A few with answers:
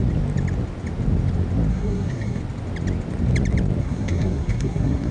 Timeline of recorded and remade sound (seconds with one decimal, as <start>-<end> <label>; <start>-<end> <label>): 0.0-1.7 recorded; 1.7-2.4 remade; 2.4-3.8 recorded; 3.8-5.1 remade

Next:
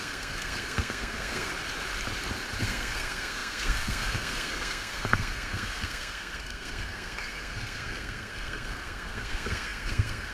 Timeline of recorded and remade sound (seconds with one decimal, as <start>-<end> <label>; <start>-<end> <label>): 0.0-1.5 remade; 1.5-2.6 recorded; 2.6-10.3 remade

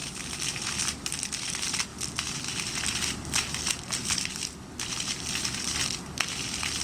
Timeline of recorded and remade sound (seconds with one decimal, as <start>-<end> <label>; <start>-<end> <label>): 0.0-6.8 recorded

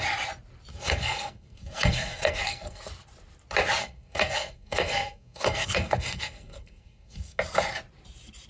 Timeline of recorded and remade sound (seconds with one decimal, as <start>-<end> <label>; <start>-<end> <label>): 0.0-0.7 recorded; 0.7-2.8 remade; 2.8-3.8 recorded; 3.8-7.4 remade; 7.4-8.5 recorded